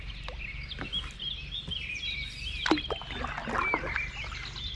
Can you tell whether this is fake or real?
real